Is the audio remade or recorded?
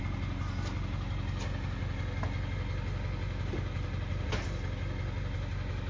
recorded